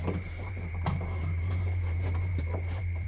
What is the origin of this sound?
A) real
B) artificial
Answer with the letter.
B